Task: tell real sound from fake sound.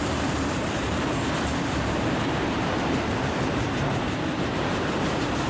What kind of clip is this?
fake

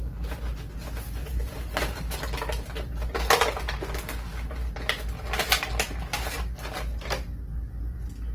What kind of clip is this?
real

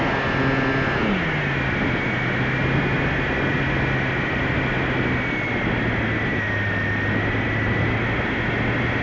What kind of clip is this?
real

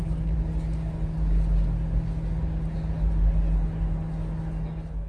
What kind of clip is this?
real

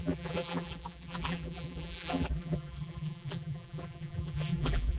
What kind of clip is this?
fake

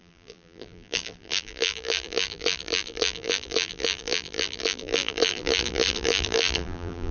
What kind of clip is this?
fake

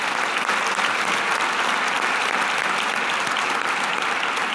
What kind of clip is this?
real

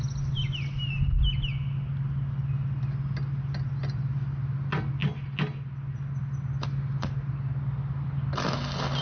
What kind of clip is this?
real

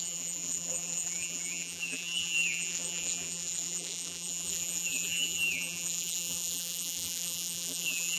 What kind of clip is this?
fake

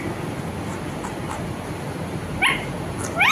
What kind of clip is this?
real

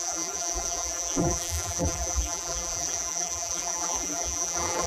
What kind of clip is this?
fake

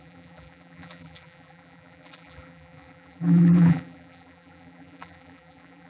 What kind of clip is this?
fake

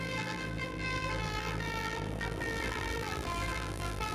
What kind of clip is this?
fake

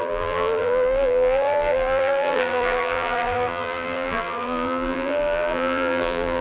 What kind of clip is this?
fake